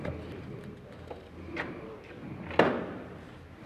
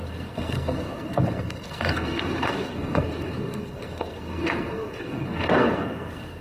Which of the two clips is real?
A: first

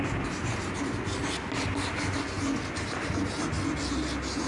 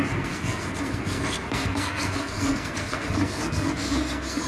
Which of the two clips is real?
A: first